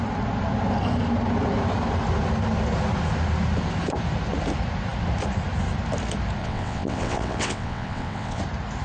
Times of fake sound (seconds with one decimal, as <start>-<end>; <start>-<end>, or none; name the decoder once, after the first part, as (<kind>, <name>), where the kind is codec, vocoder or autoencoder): 6.4-8.4 (vocoder, WaveNeXt)